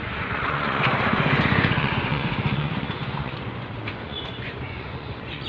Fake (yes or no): yes